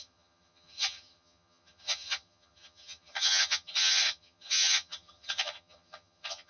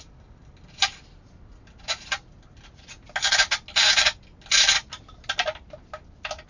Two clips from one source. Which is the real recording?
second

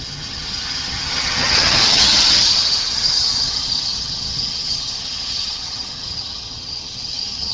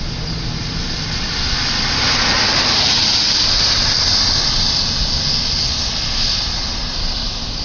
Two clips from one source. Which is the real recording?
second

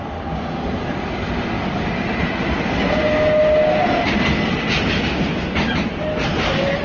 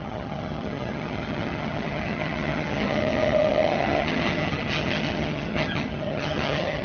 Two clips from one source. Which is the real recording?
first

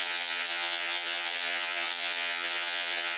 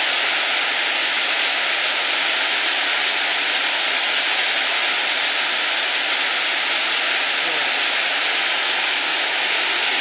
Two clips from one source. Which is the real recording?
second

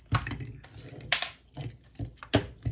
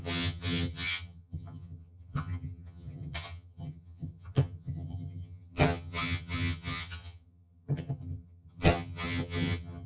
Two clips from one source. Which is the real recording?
first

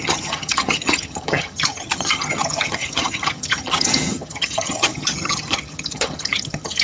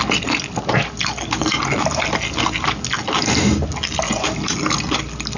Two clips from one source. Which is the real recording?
second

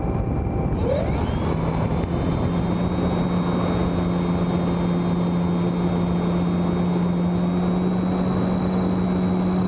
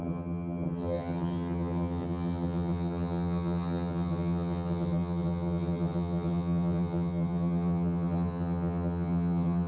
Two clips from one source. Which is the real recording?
first